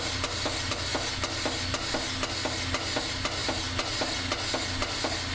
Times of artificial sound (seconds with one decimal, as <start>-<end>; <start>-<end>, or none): none